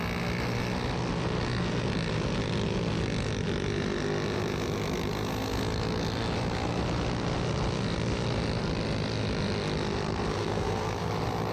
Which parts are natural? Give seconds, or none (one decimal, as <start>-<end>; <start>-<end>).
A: 0.0-10.3; 11.1-11.5